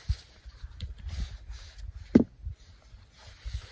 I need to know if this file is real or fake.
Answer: real